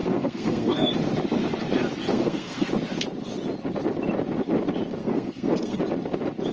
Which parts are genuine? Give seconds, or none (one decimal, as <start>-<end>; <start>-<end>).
0.9-2.1; 2.7-5.0; 5.8-6.5